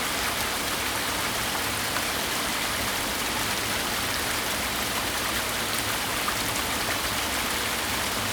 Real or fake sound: real